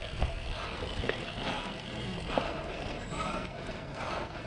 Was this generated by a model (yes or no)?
yes